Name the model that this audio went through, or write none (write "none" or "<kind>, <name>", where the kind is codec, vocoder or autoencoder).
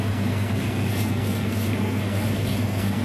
codec, SNAC